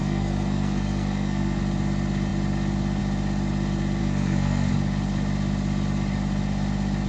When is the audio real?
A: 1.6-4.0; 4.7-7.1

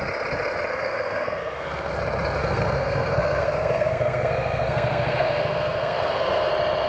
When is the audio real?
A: 0.0-0.7; 1.9-2.4; 6.5-6.9

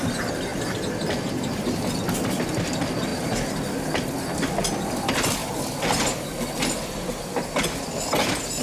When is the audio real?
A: 0.0-8.6

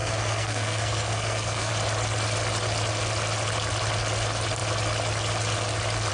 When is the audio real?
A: 1.7-6.1